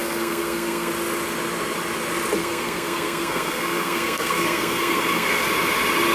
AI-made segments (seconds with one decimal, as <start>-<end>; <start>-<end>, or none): 0.0-0.9; 2.4-5.4